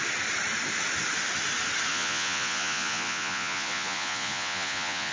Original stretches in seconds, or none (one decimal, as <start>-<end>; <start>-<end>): 0.0-1.9